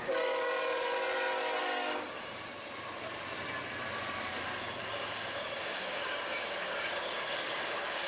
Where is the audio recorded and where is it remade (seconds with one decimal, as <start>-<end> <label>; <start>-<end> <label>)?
0.0-0.5 remade; 0.5-1.6 recorded; 1.6-2.5 remade; 2.5-4.8 recorded; 4.8-8.1 remade

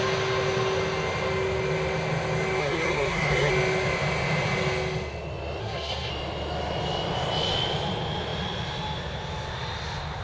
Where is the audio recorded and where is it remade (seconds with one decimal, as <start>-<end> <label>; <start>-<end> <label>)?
0.0-2.6 recorded; 2.6-3.5 remade; 3.5-5.6 recorded; 5.6-6.1 remade; 6.1-10.2 recorded

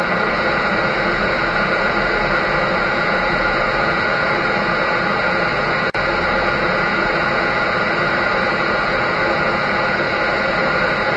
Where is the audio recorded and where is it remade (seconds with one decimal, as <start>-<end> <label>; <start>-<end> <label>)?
0.0-11.2 remade

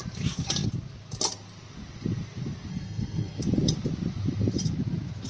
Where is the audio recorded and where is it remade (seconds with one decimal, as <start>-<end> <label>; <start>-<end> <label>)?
0.0-2.7 recorded; 2.7-3.4 remade; 3.4-5.3 recorded

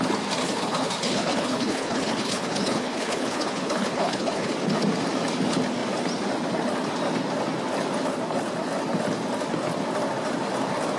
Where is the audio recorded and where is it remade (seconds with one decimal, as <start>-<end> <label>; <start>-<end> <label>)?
0.0-0.4 recorded; 0.4-4.5 remade; 4.5-11.0 recorded

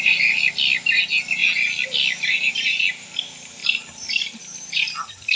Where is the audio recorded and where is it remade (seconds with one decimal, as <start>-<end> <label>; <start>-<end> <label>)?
0.0-5.4 recorded